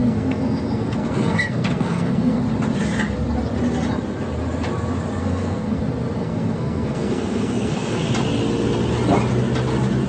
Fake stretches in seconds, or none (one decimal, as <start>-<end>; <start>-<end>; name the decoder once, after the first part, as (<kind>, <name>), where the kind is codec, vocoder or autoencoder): 0.0-2.4 (codec, SNAC); 5.2-5.8; 6.2-8.1